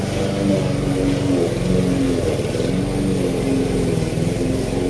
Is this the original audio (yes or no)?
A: yes